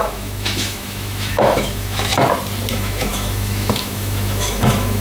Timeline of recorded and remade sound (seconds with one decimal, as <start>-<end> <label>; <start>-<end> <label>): 0.0-2.1 remade; 2.1-2.7 recorded; 2.7-5.0 remade